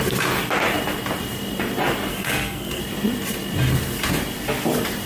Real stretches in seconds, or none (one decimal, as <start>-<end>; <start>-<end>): 0.0-2.1; 2.8-5.1